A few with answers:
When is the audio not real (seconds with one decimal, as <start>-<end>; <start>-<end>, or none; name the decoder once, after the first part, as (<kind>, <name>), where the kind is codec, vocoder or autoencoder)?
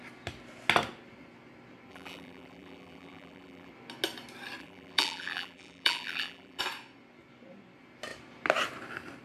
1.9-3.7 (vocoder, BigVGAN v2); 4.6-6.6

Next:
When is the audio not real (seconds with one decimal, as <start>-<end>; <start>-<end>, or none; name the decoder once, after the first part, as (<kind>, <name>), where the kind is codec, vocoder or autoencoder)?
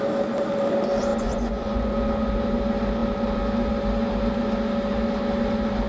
1.1-2.3 (vocoder, Vocos)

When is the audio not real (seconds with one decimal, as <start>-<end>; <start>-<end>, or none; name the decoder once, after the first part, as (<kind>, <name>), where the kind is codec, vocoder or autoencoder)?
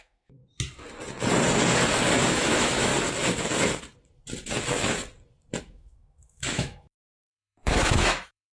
0.0-0.4 (autoencoder, DAC-VAE); 2.3-2.9; 5.6-8.5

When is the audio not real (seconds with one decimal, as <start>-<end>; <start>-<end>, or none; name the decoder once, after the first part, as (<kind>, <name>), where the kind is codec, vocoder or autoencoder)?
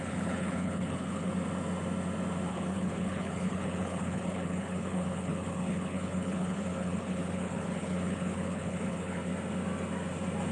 0.0-1.3 (codec, HILCodec); 2.5-9.3